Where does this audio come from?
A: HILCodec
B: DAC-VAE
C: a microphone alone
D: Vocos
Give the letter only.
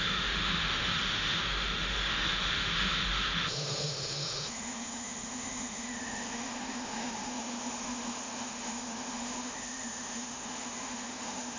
B